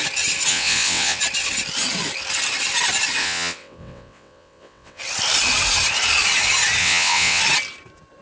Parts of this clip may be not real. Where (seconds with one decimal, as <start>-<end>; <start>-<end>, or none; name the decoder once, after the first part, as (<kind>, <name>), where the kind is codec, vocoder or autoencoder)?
0.5-1.2 (vocoder, WaveNeXt); 3.2-5.0; 6.8-7.4